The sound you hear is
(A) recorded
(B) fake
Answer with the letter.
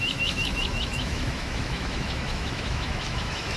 B